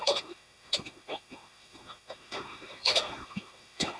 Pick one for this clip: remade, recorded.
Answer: remade